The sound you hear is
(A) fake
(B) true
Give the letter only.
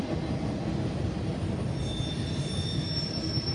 B